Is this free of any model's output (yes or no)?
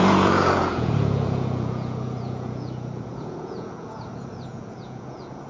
no